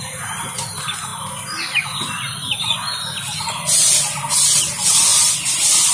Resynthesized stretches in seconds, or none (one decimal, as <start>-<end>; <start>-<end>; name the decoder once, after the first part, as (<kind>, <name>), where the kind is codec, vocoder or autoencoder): 0.0-1.1 (vocoder, BigVGAN v2); 4.6-5.9